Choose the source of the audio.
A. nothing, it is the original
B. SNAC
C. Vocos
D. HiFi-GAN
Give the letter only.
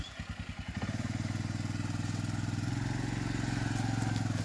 A